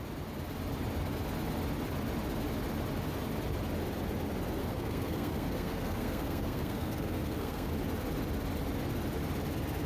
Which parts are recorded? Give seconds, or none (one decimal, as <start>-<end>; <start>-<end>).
0.0-4.6; 7.7-9.9